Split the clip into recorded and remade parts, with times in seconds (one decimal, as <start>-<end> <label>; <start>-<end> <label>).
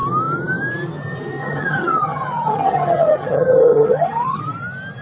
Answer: 0.0-1.4 recorded; 1.4-4.4 remade; 4.4-5.0 recorded